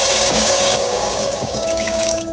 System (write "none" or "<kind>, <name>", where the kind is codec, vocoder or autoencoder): codec, DAC